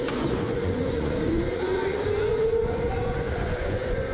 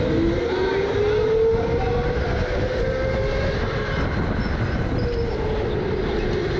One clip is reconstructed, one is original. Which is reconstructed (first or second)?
first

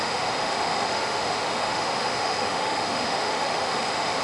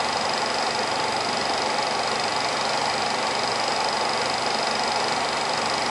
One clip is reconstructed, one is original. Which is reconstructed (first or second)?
first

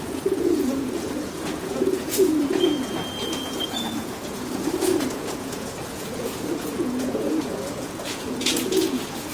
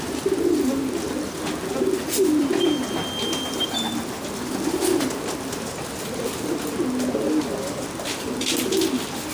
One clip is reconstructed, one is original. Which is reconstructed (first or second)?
first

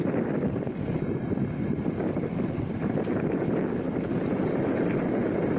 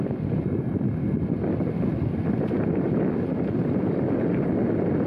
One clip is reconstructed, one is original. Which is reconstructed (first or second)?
first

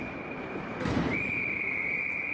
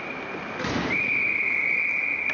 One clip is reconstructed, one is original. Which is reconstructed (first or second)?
first